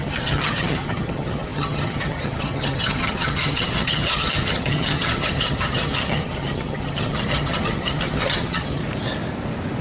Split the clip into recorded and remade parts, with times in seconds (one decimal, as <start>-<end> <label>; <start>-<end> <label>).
0.0-8.8 remade; 8.8-9.8 recorded